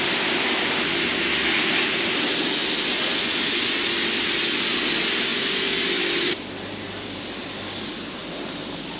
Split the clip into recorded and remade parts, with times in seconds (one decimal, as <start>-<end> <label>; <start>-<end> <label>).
0.0-9.0 recorded